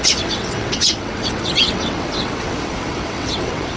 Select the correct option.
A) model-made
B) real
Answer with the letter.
A